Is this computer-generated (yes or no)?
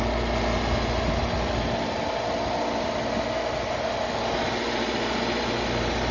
no